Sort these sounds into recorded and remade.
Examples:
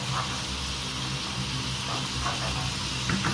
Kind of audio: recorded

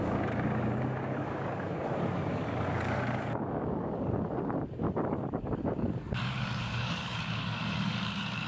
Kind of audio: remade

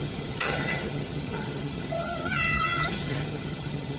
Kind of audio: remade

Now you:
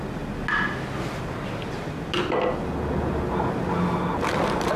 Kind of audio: recorded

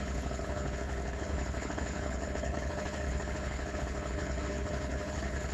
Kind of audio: remade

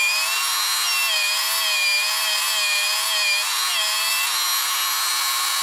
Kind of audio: recorded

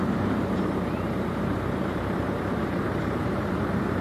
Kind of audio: remade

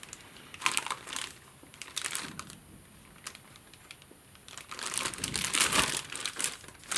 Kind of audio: recorded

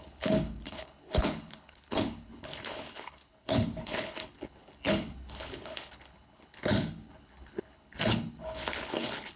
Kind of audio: remade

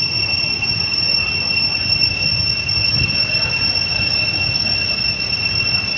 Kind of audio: recorded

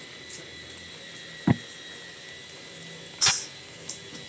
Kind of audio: recorded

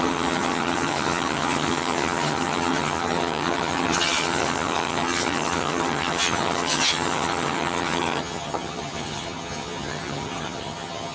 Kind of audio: remade